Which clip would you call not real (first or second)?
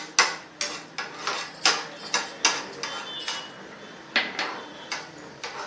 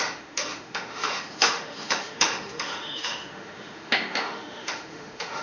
second